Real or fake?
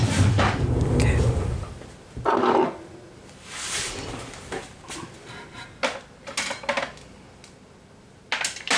real